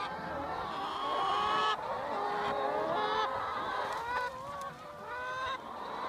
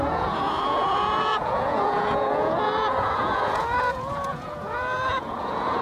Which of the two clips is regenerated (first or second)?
second